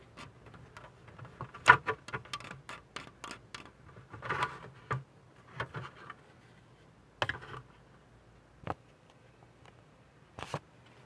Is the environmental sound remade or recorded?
recorded